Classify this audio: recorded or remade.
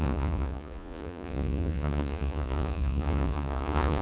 remade